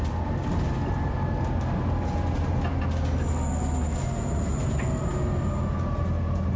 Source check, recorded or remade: recorded